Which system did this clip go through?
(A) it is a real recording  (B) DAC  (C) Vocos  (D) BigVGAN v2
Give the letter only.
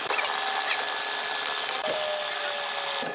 A